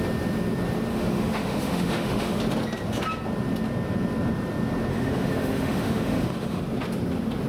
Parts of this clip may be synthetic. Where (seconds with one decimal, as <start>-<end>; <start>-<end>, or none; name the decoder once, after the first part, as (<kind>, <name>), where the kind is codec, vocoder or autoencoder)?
0.9-2.4 (autoencoder, DAC-VAE); 4.9-6.6